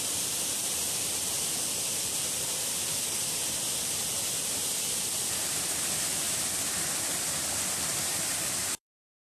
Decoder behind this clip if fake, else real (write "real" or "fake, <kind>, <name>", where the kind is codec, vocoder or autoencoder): fake, vocoder, BigVGAN v2